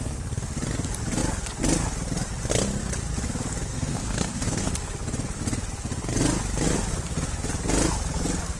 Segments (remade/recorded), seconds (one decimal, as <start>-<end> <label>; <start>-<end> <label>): 0.0-3.7 recorded; 3.7-4.7 remade; 4.7-8.6 recorded